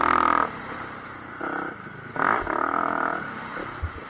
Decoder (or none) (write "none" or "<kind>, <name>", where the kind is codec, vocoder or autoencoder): none